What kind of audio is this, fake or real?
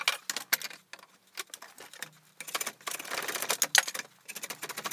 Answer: real